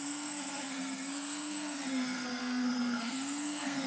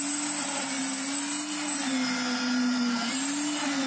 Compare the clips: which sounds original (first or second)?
second